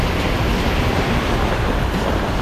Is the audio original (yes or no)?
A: yes